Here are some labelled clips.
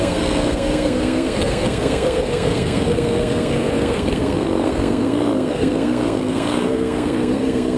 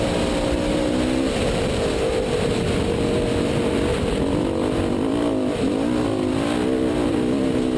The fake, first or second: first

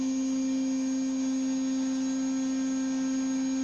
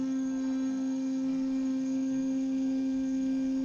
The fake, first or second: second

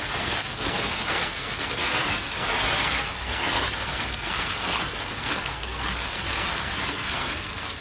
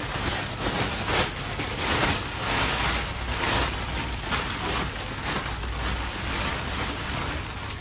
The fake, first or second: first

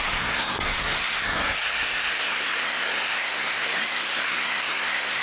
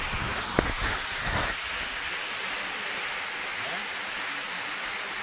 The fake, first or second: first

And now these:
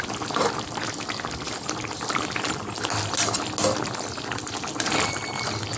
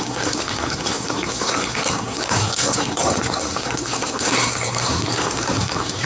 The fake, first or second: second